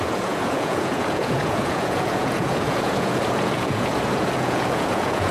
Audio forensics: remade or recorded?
remade